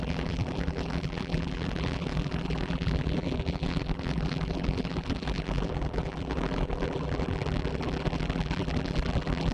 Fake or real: fake